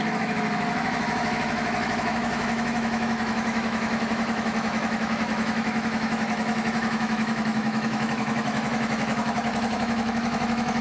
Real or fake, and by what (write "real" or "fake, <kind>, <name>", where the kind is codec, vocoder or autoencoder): fake, autoencoder, DAC-VAE